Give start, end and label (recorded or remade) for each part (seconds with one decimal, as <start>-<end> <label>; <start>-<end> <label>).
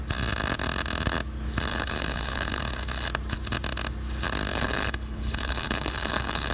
0.0-1.7 recorded; 1.7-2.6 remade; 2.6-4.5 recorded; 4.5-6.5 remade